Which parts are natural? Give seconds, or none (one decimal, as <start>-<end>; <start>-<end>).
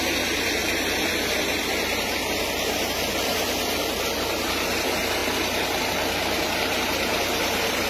0.0-7.9